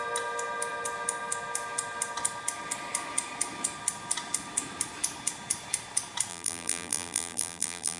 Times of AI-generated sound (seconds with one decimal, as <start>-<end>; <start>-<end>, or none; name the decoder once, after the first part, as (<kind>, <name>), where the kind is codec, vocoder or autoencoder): 6.3-8.0 (vocoder, BigVGAN v2)